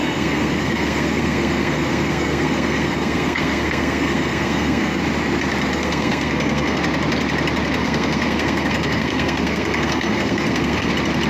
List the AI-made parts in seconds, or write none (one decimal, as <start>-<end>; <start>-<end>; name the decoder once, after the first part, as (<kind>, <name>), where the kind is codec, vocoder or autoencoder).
0.0-5.0 (codec, SNAC); 5.7-6.8; 7.8-10.9